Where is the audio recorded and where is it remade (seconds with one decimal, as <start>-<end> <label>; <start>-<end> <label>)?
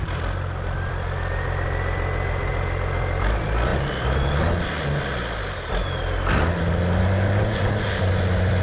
0.0-8.6 recorded